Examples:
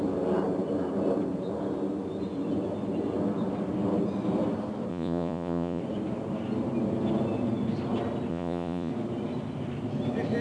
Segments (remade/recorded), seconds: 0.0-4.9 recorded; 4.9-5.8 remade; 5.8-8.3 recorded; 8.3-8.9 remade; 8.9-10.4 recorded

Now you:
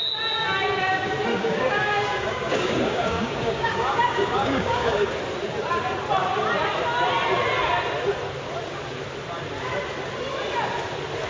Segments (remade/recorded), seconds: 0.0-1.3 recorded; 1.3-5.1 remade; 5.1-11.3 recorded

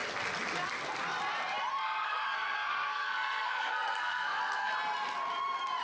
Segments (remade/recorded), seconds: 0.0-1.7 recorded; 1.7-4.7 remade; 4.7-5.8 recorded

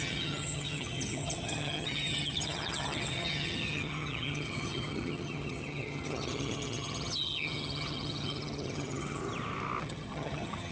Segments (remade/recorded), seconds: 0.0-9.2 remade; 9.2-9.8 recorded; 9.8-10.7 remade

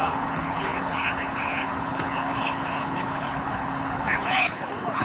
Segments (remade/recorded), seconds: 0.0-5.0 remade

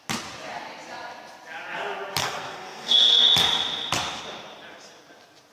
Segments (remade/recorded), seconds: 0.0-2.2 recorded; 2.2-3.2 remade; 3.2-5.5 recorded

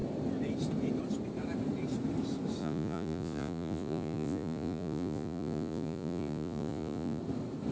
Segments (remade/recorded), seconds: 0.0-2.6 recorded; 2.6-7.2 remade; 7.2-7.7 recorded